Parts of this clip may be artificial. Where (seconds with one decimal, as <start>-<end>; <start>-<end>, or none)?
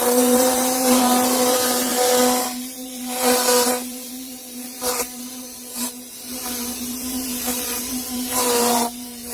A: 0.0-1.9; 2.4-9.3